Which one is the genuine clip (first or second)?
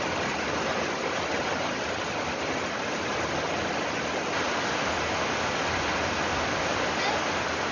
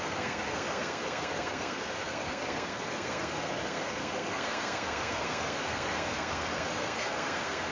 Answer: first